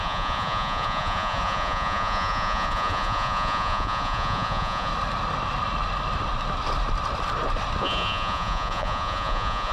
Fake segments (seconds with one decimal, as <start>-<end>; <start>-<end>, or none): 0.0-4.9; 7.8-9.7